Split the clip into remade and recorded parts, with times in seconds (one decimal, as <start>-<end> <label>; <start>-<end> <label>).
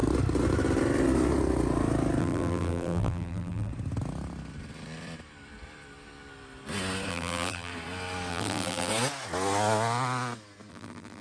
0.0-2.2 recorded; 2.2-3.7 remade; 3.7-7.1 recorded; 7.1-7.7 remade; 7.7-8.3 recorded; 8.3-8.9 remade; 8.9-10.7 recorded; 10.7-11.2 remade